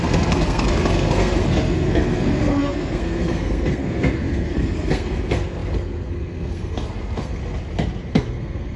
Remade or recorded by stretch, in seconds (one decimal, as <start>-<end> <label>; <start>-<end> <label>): 0.0-7.4 remade; 7.4-8.1 recorded; 8.1-8.8 remade